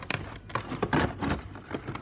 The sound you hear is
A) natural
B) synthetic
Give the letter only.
A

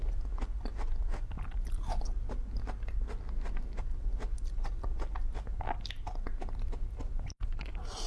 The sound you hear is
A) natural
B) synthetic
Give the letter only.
A